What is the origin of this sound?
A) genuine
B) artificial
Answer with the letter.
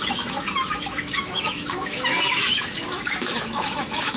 B